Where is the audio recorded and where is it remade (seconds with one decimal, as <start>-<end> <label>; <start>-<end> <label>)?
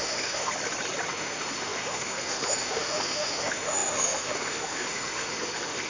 0.0-0.5 remade; 0.5-1.1 recorded; 1.1-5.9 remade